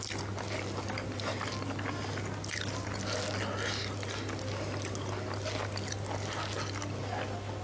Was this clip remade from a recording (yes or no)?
no